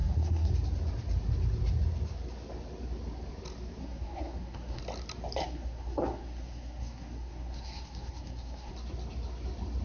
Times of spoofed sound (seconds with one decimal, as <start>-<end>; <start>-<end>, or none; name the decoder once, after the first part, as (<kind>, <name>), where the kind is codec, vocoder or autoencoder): 0.0-0.5 (codec, SNAC); 3.8-4.8; 5.4-8.7